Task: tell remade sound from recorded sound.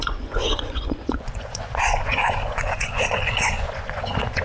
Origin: remade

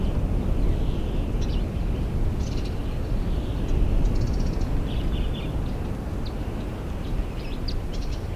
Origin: recorded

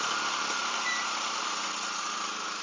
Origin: recorded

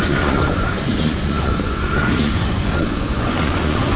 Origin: remade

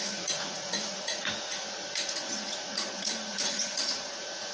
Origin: remade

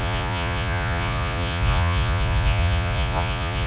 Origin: remade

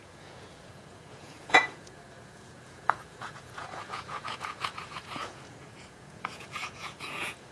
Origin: remade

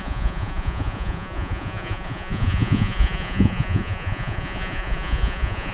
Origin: remade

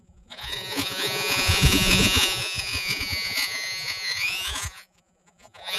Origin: remade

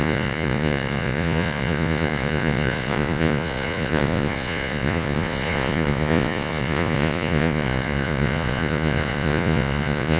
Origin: remade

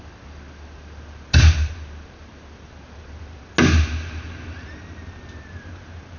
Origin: recorded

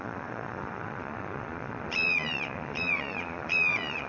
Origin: remade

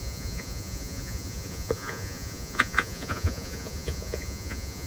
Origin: remade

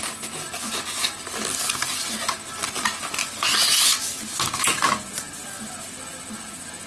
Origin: recorded